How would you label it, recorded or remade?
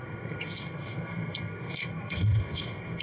remade